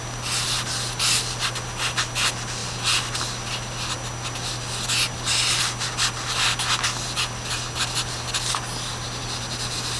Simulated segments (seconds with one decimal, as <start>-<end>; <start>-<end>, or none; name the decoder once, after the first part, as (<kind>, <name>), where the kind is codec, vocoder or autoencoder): none